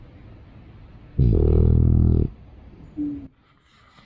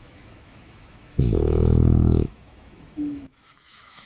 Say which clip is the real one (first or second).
first